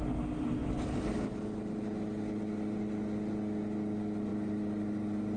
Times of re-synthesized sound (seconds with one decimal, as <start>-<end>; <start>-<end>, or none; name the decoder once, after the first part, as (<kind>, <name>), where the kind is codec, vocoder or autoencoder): none